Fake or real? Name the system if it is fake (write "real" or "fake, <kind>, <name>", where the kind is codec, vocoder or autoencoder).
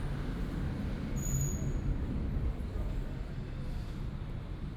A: real